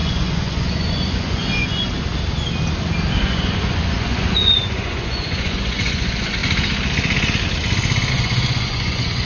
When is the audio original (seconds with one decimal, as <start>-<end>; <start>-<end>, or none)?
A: 1.9-3.2; 6.4-8.1